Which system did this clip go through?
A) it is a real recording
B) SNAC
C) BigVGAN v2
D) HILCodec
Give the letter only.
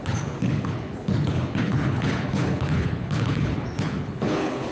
D